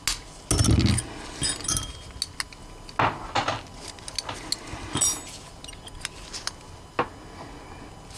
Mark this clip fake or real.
real